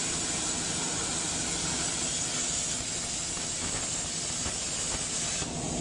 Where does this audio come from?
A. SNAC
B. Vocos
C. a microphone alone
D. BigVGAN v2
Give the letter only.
C